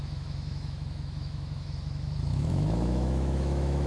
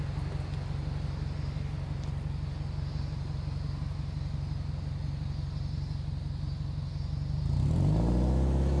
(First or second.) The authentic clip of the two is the second